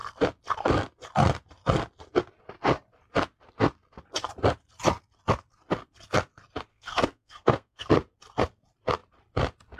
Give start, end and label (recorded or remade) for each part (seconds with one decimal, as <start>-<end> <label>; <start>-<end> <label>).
0.0-6.7 recorded; 6.7-7.9 remade; 7.9-9.8 recorded